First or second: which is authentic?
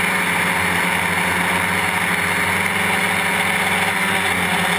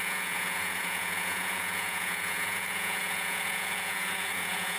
first